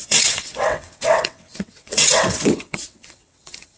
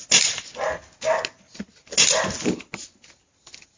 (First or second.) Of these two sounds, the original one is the second